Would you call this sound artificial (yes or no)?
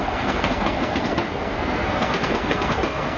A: yes